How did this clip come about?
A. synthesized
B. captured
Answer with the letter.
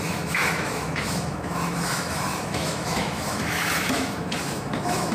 A